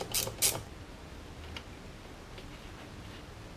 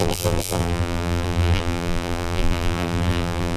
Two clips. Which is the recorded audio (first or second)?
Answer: first